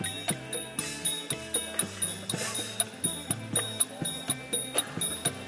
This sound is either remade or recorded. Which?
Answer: recorded